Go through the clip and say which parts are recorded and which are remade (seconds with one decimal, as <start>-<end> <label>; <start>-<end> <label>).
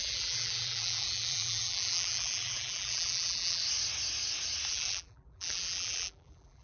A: 0.0-3.6 remade; 3.6-4.7 recorded; 4.7-6.6 remade